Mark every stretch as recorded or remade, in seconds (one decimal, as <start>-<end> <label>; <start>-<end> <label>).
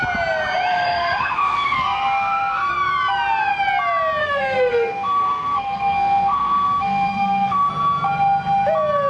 0.0-0.7 recorded; 0.7-2.7 remade; 2.7-4.2 recorded; 4.2-7.7 remade; 7.7-9.1 recorded